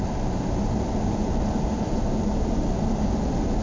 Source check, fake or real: real